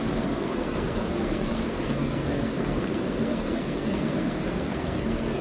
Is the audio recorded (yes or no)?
no